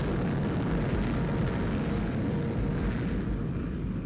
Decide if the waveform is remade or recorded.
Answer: recorded